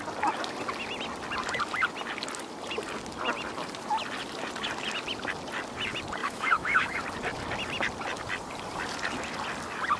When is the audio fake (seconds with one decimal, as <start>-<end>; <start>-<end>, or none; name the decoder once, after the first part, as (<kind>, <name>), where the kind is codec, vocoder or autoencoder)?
6.2-7.0 (autoencoder, DAC-VAE)

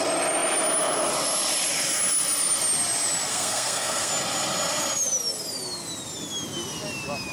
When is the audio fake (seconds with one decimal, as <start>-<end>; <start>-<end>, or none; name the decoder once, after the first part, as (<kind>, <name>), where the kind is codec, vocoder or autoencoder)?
3.3-4.1 (codec, SNAC)

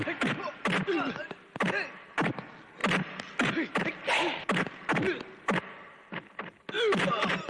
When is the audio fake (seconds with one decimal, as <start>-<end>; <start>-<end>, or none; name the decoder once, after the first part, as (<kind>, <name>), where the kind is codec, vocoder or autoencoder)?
none

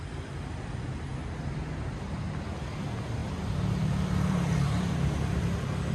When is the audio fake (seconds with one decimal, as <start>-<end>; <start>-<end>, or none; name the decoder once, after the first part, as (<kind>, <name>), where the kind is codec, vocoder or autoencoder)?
3.2-5.4 (vocoder, BigVGAN v2)

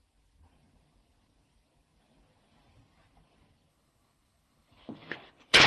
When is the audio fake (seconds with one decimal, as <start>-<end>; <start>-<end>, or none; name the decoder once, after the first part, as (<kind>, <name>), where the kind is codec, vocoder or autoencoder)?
3.7-5.7 (codec, HILCodec)